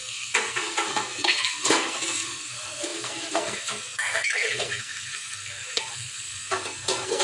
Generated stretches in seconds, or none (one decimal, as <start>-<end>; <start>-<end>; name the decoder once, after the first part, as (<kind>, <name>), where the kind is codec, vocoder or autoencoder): 0.0-7.2 (codec, SNAC)